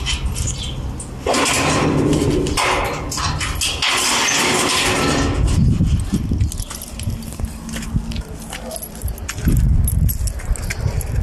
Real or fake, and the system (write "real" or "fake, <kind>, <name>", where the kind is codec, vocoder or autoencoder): real